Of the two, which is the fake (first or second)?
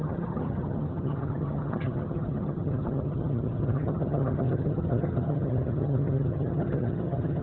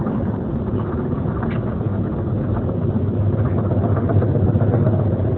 first